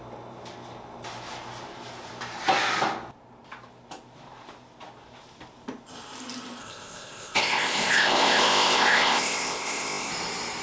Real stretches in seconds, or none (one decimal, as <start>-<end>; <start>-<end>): 0.0-6.6; 10.1-10.6

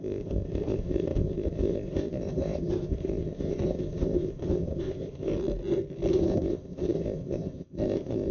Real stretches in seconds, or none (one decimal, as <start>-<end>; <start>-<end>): 5.3-6.1

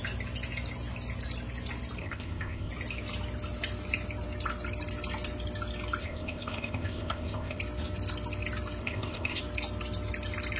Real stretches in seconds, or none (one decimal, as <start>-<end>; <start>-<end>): 0.0-2.0; 2.7-6.0; 7.6-8.8; 9.4-10.6

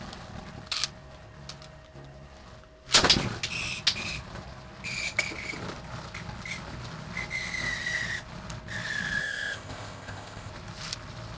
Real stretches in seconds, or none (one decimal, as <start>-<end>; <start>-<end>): 0.0-9.2; 10.5-11.4

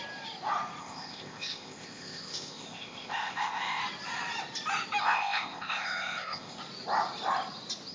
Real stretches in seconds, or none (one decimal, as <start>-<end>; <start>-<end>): 0.0-0.8; 3.8-5.0; 6.6-7.9

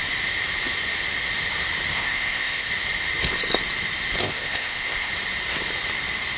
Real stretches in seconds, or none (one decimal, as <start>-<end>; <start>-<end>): 0.0-1.9; 2.7-4.2; 5.1-6.4

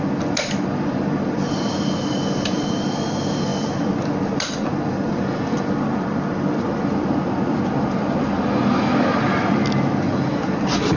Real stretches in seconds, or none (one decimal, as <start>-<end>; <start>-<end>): 0.0-11.0